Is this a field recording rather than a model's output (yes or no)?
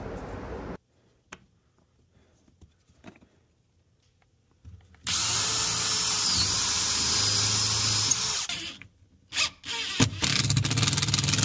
yes